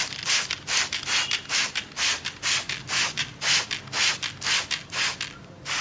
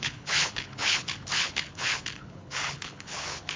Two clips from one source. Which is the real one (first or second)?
first